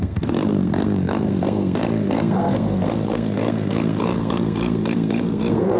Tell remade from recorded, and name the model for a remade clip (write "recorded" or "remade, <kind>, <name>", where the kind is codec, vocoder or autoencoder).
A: remade, codec, SNAC